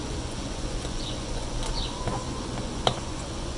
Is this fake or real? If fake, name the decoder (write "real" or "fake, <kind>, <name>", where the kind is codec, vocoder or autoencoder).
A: fake, vocoder, Vocos